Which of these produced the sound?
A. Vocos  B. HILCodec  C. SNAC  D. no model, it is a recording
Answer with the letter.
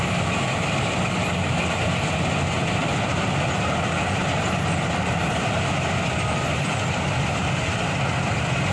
D